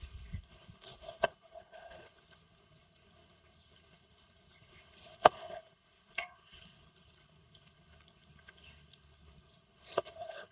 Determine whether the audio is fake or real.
fake